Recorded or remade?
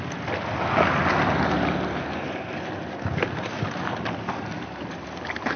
recorded